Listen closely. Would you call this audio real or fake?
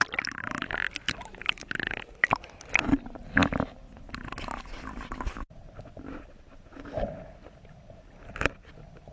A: real